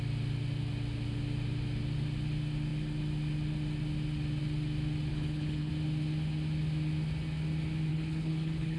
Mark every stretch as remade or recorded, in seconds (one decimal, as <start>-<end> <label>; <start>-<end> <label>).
0.0-5.1 recorded; 5.1-5.7 remade; 5.7-7.9 recorded; 7.9-8.8 remade